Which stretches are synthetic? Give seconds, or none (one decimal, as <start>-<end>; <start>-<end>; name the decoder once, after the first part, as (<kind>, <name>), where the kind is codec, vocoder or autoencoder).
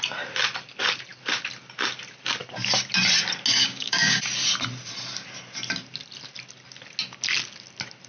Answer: 3.6-4.2 (codec, DAC)